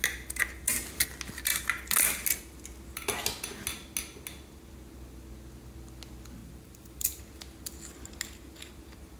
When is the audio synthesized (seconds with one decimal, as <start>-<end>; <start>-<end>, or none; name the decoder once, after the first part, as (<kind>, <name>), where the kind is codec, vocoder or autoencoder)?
6.4-7.2 (vocoder, BigVGAN v2)